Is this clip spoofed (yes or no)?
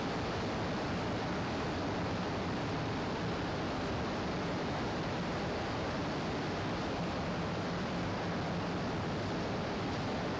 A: no